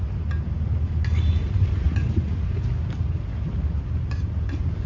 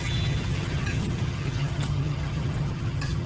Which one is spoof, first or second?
second